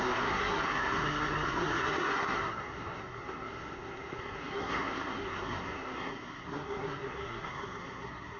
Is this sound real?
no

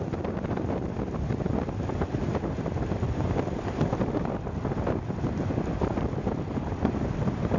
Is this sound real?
no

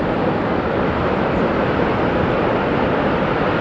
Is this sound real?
yes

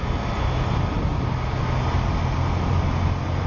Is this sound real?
yes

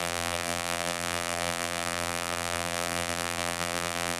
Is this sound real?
no